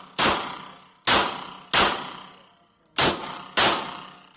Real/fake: real